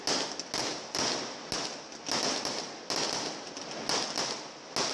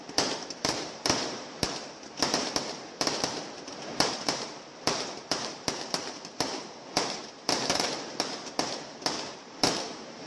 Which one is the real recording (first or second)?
first